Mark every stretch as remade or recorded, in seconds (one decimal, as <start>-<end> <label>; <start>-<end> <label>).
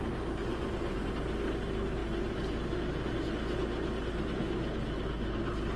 0.0-0.4 recorded; 0.4-1.1 remade; 1.1-5.8 recorded